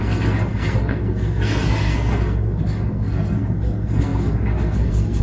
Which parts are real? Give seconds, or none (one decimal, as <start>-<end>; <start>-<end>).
none